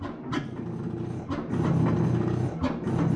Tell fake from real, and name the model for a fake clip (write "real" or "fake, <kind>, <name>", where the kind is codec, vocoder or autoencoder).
real